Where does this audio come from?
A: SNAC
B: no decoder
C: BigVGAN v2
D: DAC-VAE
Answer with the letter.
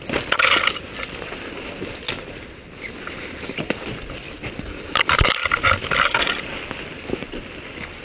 C